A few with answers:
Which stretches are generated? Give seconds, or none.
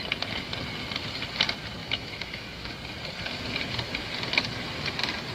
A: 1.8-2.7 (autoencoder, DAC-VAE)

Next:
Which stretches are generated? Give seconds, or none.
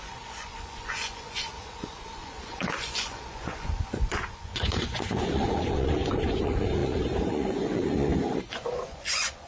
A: 0.0-9.5 (vocoder, Vocos)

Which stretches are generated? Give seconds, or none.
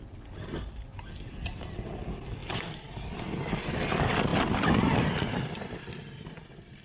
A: none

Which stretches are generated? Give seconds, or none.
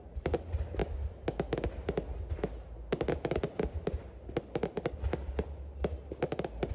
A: none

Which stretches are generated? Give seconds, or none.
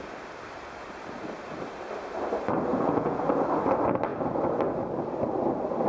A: 2.7-3.3 (vocoder, Vocos)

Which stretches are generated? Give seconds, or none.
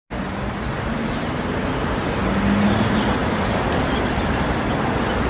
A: none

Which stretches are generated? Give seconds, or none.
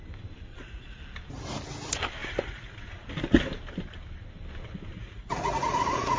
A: 0.5-1.0 (vocoder, Vocos); 2.2-3.1; 5.0-6.2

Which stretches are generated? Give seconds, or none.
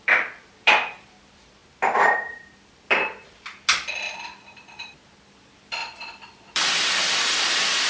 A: 0.0-1.6 (vocoder, BigVGAN v2); 5.3-7.9